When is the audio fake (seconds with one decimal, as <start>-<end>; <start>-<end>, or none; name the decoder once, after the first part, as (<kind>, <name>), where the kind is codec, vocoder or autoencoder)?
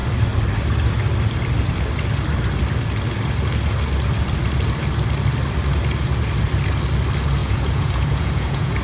7.4-8.8 (vocoder, Vocos)